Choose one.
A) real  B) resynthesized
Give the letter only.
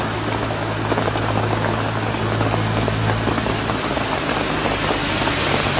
A